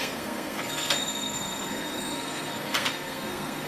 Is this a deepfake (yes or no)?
yes